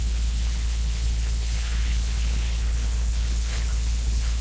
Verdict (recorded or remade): remade